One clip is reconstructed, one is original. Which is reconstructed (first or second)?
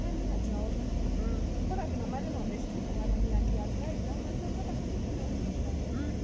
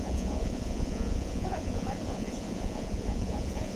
second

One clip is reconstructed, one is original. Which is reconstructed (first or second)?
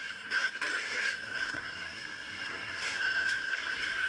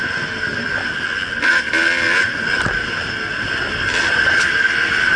first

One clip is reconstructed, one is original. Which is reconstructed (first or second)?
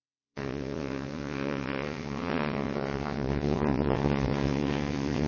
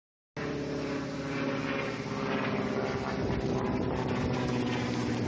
first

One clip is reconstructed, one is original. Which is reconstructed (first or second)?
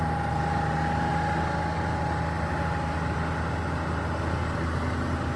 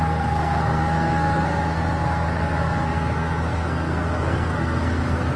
second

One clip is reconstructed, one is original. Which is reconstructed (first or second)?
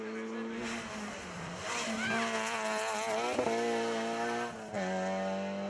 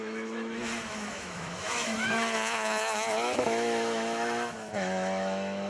second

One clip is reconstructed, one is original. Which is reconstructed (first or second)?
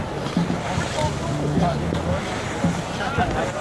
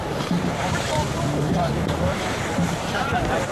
second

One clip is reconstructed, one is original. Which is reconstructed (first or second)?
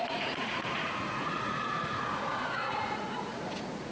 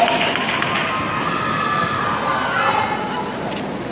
first